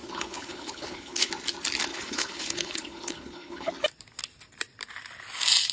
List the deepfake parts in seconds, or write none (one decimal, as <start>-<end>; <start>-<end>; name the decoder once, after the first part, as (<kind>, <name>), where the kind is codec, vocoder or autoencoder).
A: 0.0-1.3 (codec, HILCodec); 1.9-3.7